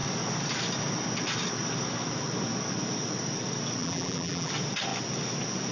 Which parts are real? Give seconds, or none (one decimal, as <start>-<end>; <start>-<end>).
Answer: 0.0-3.8; 4.5-5.7

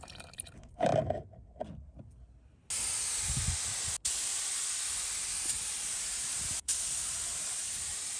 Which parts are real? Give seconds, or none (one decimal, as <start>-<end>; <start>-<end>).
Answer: 0.9-5.5

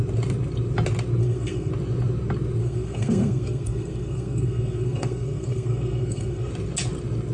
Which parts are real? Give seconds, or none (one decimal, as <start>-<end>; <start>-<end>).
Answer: 0.0-1.2; 1.7-2.6; 6.5-7.3

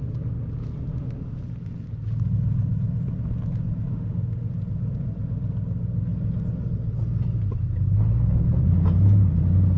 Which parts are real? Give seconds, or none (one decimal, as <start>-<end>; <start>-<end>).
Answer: 0.0-0.9; 1.4-3.9; 4.5-9.8

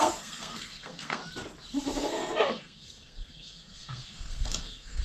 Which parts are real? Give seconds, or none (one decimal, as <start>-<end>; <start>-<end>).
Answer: 1.2-2.0

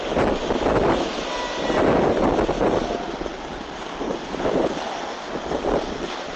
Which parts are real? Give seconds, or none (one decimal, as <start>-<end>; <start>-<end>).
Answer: 0.0-6.4